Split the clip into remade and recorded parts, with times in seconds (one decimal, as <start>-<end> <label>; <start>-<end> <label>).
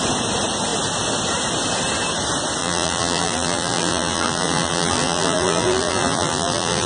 0.0-2.6 recorded; 2.6-6.9 remade